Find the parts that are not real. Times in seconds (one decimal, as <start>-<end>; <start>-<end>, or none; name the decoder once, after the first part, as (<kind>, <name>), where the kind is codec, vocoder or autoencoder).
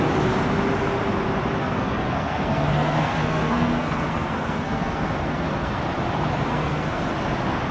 1.6-5.8 (codec, SNAC); 6.5-7.1